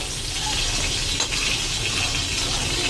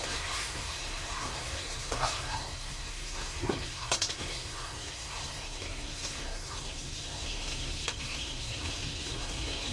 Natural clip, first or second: first